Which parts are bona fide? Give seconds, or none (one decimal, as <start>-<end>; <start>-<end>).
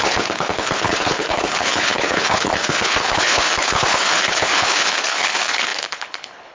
none